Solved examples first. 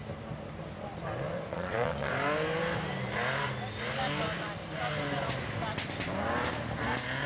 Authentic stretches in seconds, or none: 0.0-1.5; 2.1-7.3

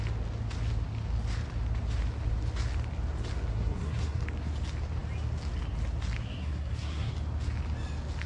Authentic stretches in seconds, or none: 0.0-3.5; 4.2-6.2; 7.1-8.3

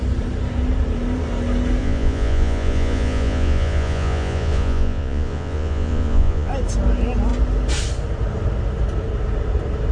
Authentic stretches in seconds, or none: 0.0-1.8; 6.5-9.9

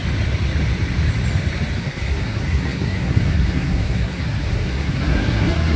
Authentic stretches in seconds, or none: 0.0-1.8